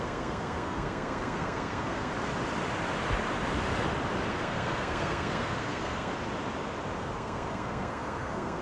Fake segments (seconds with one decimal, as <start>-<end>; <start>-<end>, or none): 0.0-2.1; 4.3-6.1; 7.0-8.6